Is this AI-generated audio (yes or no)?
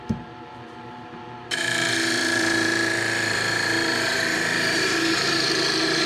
yes